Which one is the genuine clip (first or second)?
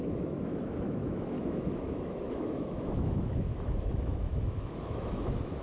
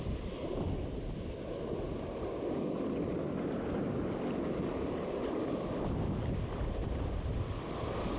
second